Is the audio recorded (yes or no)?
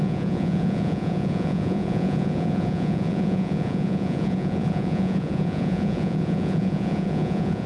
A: no